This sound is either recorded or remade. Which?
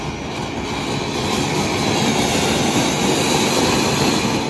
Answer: recorded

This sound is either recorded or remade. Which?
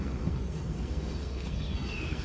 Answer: remade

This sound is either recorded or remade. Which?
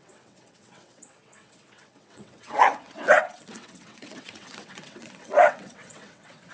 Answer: remade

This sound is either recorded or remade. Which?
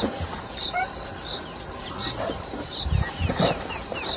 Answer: recorded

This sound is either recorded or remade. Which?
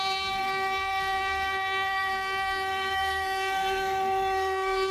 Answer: remade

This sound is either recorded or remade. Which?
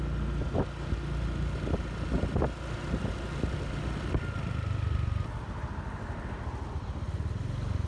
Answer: recorded